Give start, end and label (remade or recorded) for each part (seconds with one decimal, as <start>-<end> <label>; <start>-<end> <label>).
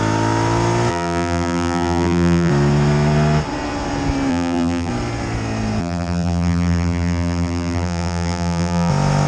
0.0-0.9 recorded; 0.9-2.5 remade; 2.5-4.3 recorded; 4.3-4.9 remade; 4.9-5.8 recorded; 5.8-8.9 remade; 8.9-9.3 recorded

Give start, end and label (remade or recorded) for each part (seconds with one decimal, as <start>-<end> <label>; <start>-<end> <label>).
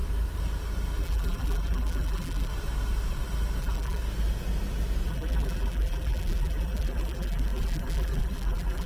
0.0-1.0 recorded; 1.0-2.5 remade; 2.5-3.6 recorded; 3.6-4.0 remade; 4.0-5.1 recorded; 5.1-8.9 remade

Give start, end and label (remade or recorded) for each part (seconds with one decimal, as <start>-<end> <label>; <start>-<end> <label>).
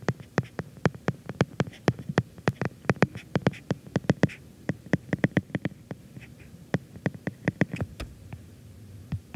0.0-3.4 remade; 3.4-4.5 recorded; 4.5-9.4 remade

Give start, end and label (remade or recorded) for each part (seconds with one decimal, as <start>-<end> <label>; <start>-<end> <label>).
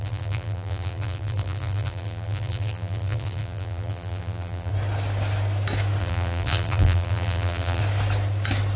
0.0-4.7 remade; 4.7-6.0 recorded; 6.0-7.8 remade; 7.8-8.8 recorded